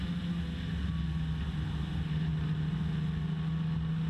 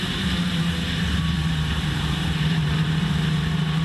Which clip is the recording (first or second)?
first